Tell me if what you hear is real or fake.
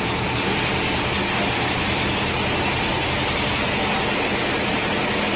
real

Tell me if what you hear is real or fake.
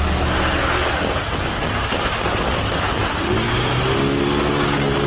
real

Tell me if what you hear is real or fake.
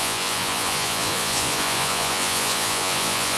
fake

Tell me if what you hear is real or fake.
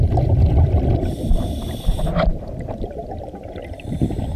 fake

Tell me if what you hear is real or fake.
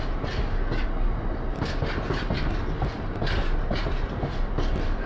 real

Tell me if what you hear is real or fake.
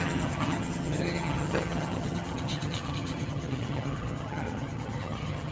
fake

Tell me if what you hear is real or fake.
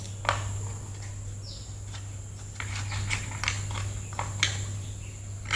real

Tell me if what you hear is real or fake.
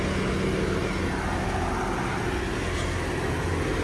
real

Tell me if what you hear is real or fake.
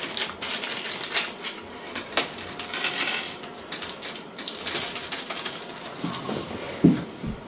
real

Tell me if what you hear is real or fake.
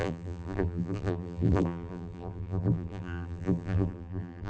fake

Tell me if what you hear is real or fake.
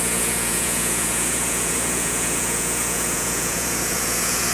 fake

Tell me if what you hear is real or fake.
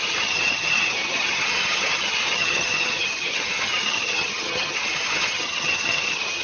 fake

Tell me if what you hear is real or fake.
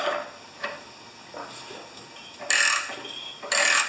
real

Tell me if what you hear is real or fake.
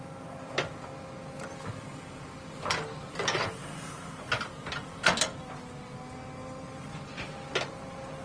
real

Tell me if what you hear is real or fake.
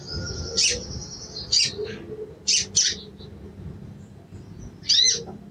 real